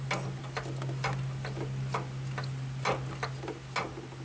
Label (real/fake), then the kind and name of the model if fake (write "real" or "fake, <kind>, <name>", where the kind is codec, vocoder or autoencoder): real